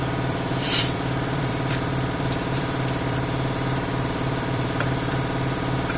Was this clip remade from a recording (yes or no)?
yes